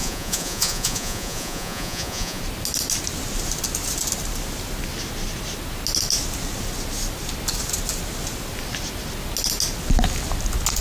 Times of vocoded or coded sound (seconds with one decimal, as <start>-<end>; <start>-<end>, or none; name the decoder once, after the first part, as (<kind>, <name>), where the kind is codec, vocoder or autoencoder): 0.0-2.4 (vocoder, Vocos)